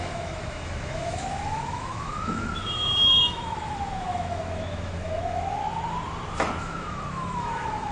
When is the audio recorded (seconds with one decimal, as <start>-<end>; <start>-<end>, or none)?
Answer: 5.6-6.6